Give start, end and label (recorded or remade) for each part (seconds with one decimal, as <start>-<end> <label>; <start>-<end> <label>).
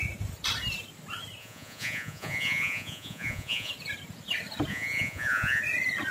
0.0-1.4 recorded; 1.4-3.7 remade; 3.7-4.7 recorded; 4.7-5.6 remade; 5.6-6.1 recorded